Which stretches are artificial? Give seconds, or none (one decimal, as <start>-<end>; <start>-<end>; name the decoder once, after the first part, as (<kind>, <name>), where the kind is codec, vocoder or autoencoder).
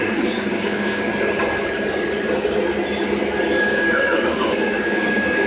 0.0-1.1 (codec, DAC); 3.6-5.5